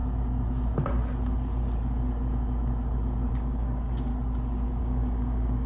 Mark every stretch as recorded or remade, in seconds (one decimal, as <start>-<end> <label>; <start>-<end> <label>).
0.0-3.3 recorded; 3.3-4.1 remade; 4.1-4.8 recorded; 4.8-5.7 remade